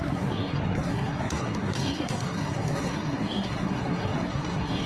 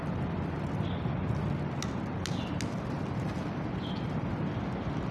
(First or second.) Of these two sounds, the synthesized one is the first